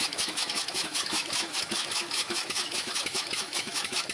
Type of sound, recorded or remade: remade